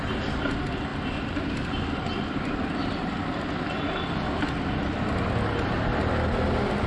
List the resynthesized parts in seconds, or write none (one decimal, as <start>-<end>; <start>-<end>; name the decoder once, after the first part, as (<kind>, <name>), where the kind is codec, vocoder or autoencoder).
none